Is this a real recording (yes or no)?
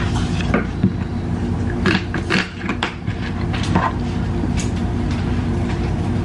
yes